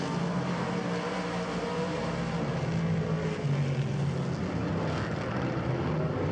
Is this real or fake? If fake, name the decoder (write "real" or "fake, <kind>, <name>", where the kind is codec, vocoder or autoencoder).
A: real